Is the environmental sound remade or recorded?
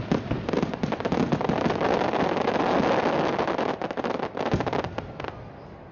recorded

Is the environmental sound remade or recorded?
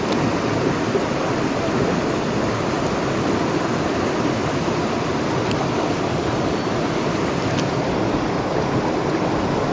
recorded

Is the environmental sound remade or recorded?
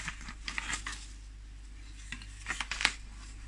recorded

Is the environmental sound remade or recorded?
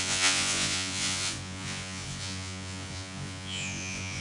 remade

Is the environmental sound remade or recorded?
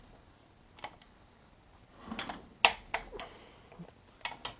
recorded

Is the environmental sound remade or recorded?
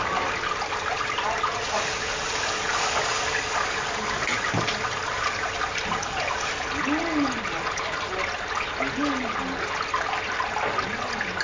recorded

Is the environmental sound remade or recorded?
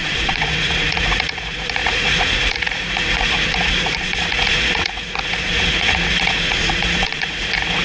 remade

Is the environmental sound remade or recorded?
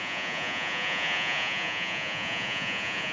remade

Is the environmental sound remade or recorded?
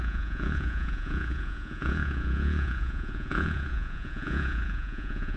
remade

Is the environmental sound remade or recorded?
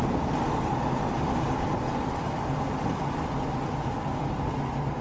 recorded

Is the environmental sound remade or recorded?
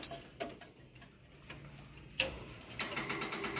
recorded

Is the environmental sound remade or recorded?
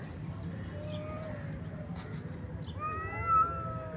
recorded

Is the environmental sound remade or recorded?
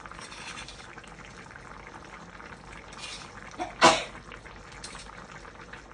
recorded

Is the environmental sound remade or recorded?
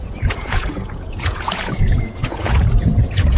remade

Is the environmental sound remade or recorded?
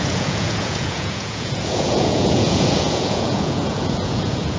remade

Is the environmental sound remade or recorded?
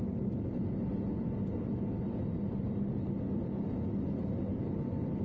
recorded